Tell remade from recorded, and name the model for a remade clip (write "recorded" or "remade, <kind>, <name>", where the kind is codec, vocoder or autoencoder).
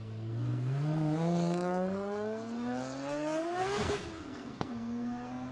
remade, codec, SNAC